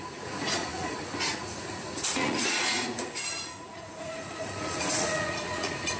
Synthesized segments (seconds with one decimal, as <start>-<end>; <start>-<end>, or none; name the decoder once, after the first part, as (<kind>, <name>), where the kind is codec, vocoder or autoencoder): 0.0-6.0 (vocoder, Vocos)